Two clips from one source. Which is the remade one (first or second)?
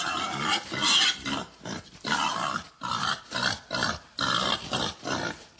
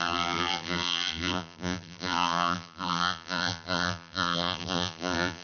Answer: second